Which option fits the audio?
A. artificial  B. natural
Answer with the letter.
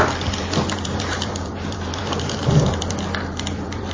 A